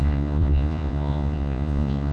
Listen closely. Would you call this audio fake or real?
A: fake